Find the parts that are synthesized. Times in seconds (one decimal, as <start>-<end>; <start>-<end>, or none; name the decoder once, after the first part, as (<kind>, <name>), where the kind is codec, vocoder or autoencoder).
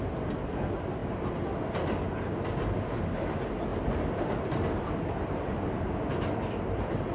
none